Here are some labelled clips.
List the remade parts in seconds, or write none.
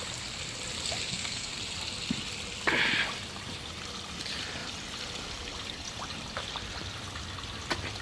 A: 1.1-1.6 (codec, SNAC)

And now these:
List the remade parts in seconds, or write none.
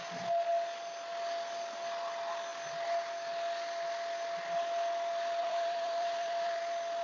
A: 5.4-6.6 (vocoder, BigVGAN v2)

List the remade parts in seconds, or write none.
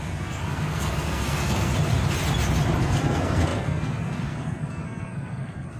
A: 0.0-1.7 (codec, SNAC); 2.8-5.8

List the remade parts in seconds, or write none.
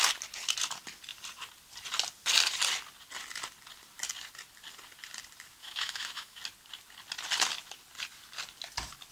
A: 5.6-6.4 (autoencoder, DAC-VAE)